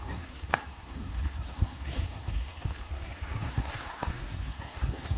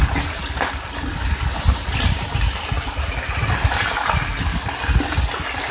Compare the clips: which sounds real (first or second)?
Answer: second